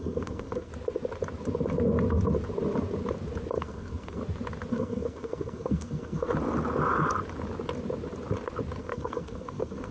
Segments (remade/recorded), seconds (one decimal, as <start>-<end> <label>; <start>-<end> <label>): 0.0-0.7 remade; 0.7-3.5 recorded; 3.5-4.2 remade; 4.2-4.7 recorded; 4.7-6.3 remade; 6.3-8.8 recorded; 8.8-9.9 remade